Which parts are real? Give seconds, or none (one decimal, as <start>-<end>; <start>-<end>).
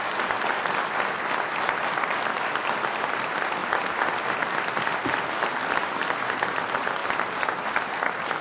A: 0.0-8.4